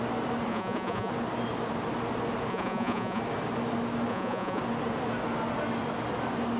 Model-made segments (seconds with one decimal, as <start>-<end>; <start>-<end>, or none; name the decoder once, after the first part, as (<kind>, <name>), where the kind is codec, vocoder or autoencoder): 0.5-1.1 (vocoder, Vocos); 2.5-3.2; 4.1-4.6